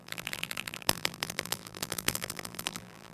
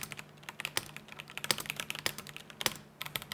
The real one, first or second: second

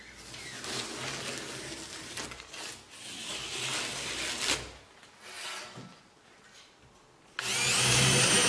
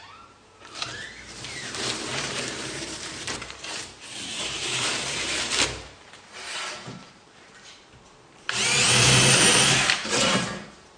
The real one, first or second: first